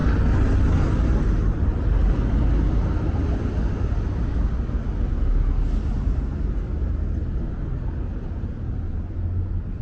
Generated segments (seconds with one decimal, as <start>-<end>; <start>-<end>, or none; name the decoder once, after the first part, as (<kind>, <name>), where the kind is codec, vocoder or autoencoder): 8.1-8.7 (vocoder, Vocos)